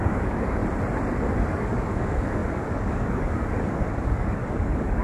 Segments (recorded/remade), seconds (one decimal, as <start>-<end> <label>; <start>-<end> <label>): 0.0-0.6 remade; 0.6-1.5 recorded; 1.5-5.0 remade